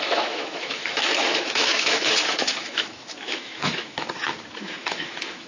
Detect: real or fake fake